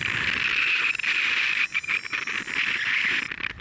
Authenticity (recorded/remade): recorded